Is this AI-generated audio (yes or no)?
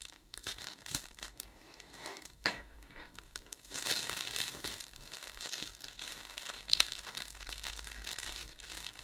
yes